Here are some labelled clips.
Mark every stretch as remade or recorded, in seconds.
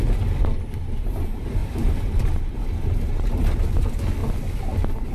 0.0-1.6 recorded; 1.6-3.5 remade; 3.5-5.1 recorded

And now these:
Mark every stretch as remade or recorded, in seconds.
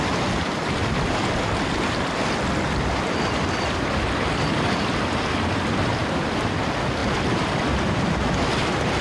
0.0-7.0 recorded; 7.0-8.2 remade; 8.2-9.0 recorded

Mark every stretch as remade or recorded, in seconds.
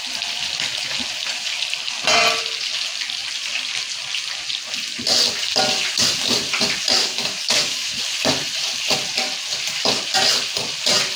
0.0-7.0 recorded; 7.0-8.0 remade; 8.0-11.2 recorded